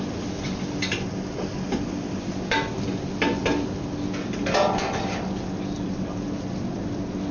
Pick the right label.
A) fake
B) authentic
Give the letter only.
B